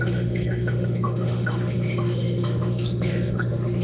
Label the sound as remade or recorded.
remade